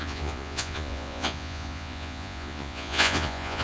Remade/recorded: remade